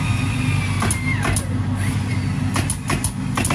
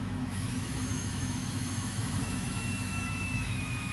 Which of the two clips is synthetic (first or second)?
second